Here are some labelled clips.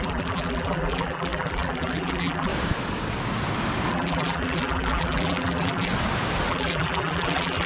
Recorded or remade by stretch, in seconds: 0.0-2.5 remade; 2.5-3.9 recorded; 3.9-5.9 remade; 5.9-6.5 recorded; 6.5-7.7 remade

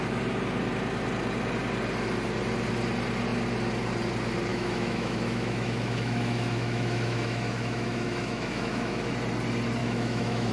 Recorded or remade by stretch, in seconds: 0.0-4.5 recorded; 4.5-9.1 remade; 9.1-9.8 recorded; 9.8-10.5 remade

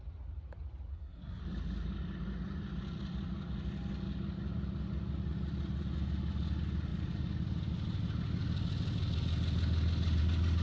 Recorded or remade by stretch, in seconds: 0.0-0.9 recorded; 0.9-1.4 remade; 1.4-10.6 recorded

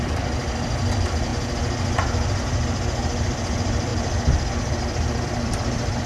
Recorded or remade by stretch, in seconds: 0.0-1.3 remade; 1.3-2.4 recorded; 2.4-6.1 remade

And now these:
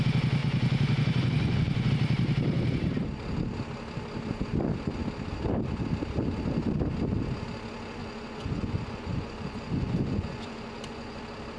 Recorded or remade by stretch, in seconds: 0.0-0.4 recorded; 0.4-1.9 remade; 1.9-8.0 recorded; 8.0-11.2 remade; 11.2-11.6 recorded

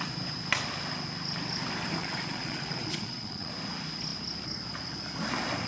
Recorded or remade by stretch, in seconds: 0.0-2.0 recorded; 2.0-3.5 remade; 3.5-5.7 recorded

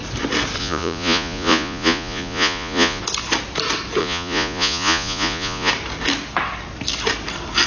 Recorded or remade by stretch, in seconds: 0.0-0.6 recorded; 0.6-3.0 remade; 3.0-4.0 recorded; 4.0-5.7 remade; 5.7-7.7 recorded